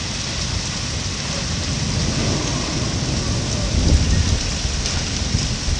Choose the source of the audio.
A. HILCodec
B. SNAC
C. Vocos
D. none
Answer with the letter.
D